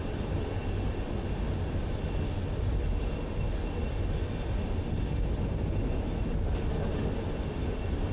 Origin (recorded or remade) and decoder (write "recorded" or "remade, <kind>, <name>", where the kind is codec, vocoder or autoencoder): recorded